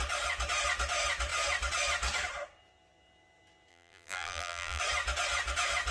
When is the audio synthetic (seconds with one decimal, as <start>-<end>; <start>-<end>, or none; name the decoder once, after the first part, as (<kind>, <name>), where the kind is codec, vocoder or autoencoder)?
3.7-4.8 (vocoder, BigVGAN v2)

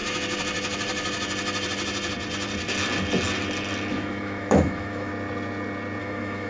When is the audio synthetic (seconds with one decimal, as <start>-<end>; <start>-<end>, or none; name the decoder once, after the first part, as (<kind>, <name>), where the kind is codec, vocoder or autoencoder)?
3.9-5.1 (autoencoder, DAC-VAE); 6.0-6.5

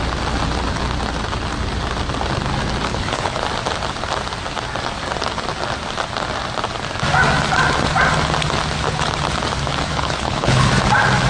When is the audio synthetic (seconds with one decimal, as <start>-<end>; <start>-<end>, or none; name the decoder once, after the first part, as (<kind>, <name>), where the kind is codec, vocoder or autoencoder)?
2.9-3.4 (codec, HILCodec); 9.9-10.7

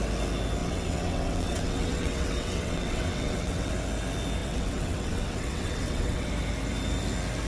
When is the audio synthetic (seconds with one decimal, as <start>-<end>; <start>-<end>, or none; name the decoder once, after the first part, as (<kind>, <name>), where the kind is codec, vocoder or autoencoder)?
0.6-3.7 (vocoder, WaveNeXt); 4.4-6.3

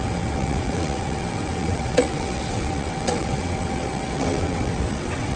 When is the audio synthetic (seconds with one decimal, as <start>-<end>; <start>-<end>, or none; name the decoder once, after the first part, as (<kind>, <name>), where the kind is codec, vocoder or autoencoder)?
0.0-5.4 (vocoder, WaveNeXt)